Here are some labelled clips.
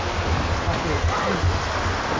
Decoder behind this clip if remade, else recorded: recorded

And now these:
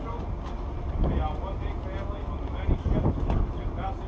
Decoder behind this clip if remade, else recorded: recorded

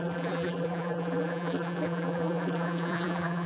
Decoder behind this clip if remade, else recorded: remade, vocoder, BigVGAN v2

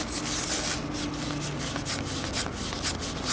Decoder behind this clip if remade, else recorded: recorded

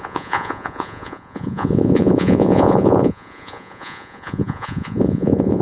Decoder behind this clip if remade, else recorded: remade, vocoder, Vocos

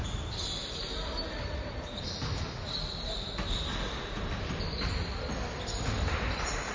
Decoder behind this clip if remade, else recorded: remade, vocoder, BigVGAN v2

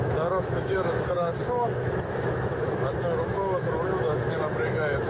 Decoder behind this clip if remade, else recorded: remade, autoencoder, DAC-VAE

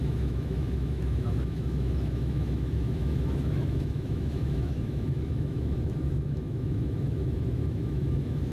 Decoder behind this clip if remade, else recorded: remade, autoencoder, DAC-VAE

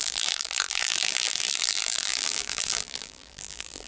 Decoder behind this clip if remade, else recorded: remade, vocoder, BigVGAN v2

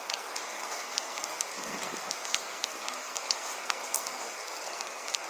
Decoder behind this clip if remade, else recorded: remade, codec, SNAC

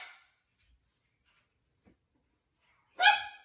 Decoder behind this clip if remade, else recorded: recorded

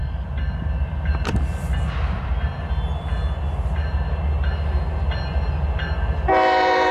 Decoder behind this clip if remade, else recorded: recorded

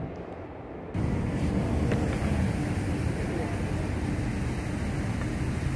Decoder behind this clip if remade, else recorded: recorded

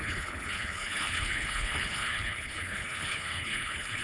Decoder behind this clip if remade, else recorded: remade, codec, HILCodec